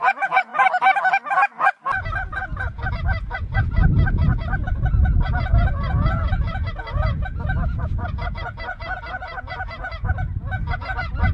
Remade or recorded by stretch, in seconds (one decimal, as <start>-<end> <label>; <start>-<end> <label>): 0.0-0.5 remade; 0.5-2.3 recorded; 2.3-11.3 remade